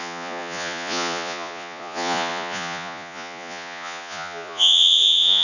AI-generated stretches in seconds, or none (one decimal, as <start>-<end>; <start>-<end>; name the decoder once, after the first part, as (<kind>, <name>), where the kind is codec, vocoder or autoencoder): 0.0-5.4 (vocoder, Vocos)